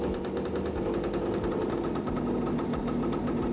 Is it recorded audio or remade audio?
recorded